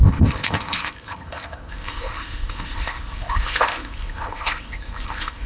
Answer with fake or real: fake